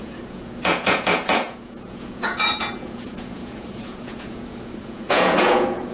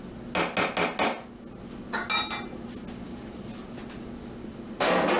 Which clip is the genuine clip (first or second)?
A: second